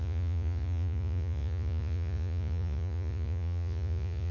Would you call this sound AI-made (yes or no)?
yes